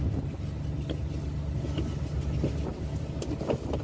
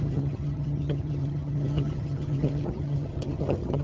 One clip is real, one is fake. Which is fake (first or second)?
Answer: second